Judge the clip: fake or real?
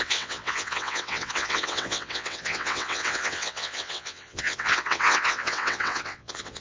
fake